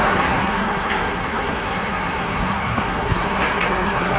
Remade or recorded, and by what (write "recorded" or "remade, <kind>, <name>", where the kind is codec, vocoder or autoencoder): remade, codec, SNAC